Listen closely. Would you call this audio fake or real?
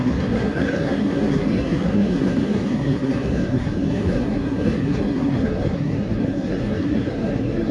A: fake